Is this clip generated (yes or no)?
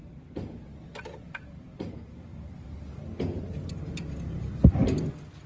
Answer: no